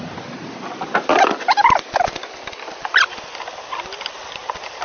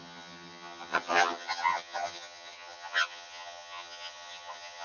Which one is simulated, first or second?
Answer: second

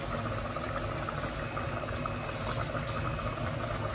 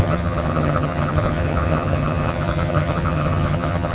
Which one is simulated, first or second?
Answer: second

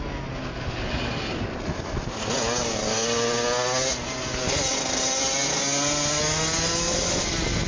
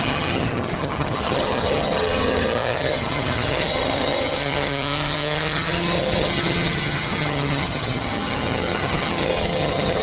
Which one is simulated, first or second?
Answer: second